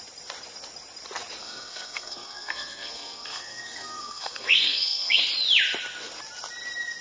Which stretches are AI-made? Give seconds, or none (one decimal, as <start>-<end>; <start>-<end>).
1.4-5.2